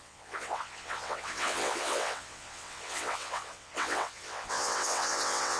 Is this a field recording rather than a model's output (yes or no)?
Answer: no